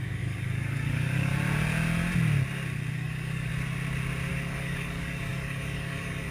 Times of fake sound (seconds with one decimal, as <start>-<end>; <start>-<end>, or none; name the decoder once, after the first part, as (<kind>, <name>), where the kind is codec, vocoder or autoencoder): 0.0-1.3 (codec, DAC); 2.9-3.5; 4.3-6.3